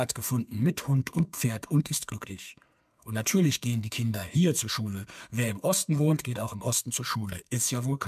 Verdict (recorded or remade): remade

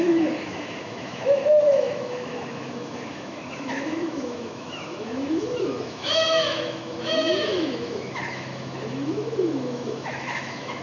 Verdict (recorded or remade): remade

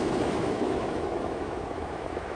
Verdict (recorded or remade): remade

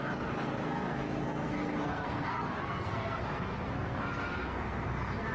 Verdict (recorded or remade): remade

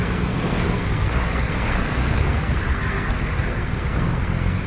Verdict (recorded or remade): remade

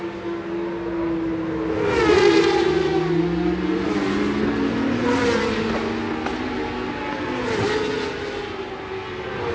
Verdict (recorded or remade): recorded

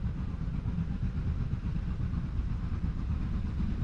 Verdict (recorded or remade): recorded